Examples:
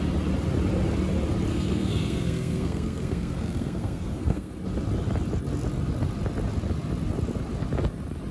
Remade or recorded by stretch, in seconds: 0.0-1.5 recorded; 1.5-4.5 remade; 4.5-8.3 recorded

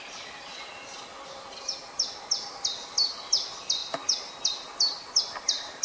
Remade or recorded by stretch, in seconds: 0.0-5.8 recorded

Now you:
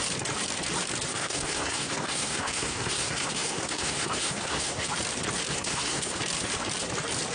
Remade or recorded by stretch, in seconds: 0.0-1.1 recorded; 1.1-4.9 remade; 4.9-5.5 recorded; 5.5-6.2 remade; 6.2-7.3 recorded